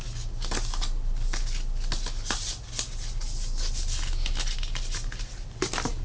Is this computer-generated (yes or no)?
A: no